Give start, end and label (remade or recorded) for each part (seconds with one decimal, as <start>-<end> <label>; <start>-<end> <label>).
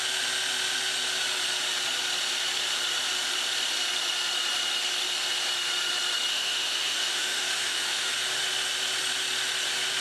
0.0-6.3 recorded; 6.3-8.1 remade; 8.1-10.0 recorded